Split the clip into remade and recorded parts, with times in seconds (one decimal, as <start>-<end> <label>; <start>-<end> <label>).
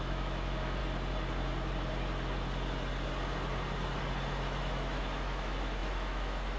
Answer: 0.0-0.8 remade; 0.8-4.3 recorded; 4.3-6.6 remade